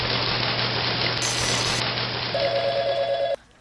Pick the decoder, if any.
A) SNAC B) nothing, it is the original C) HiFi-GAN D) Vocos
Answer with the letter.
B